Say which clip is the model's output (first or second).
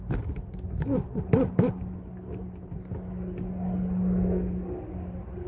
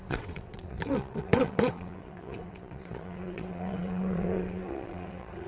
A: second